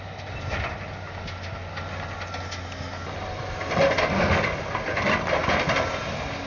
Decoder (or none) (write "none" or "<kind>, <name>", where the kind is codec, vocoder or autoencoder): none